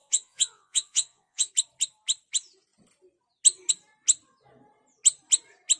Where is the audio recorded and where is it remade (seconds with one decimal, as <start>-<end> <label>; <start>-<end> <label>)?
0.0-1.5 remade; 1.5-5.8 recorded